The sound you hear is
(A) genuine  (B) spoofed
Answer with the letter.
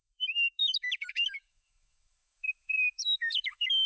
B